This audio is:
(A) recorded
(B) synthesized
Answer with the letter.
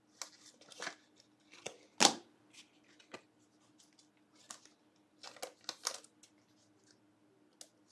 A